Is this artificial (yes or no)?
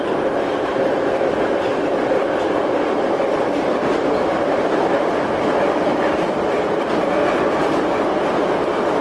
yes